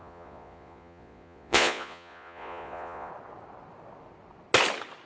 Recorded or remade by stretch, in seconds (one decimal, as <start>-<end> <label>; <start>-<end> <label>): 0.0-3.1 remade; 3.1-5.1 recorded